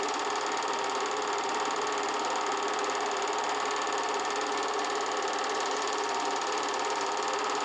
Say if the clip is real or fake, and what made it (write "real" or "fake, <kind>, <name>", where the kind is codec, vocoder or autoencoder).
real